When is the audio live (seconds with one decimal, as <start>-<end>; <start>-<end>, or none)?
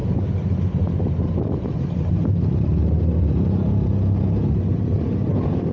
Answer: 0.0-5.7